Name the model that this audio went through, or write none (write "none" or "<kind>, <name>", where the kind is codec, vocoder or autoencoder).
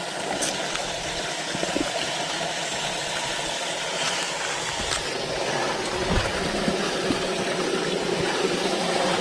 none